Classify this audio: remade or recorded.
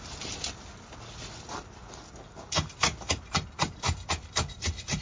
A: recorded